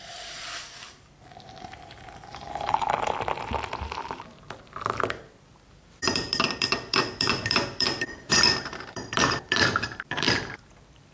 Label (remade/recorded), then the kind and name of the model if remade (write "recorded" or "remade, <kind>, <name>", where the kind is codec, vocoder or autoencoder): remade, vocoder, BigVGAN v2